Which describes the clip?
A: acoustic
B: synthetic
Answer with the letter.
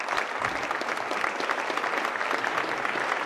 A